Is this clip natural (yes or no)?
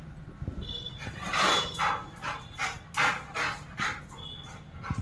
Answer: yes